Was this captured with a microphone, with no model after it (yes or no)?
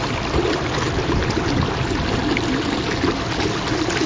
yes